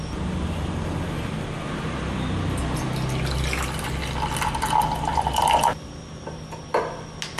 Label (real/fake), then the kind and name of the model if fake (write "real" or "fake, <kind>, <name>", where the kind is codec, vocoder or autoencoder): real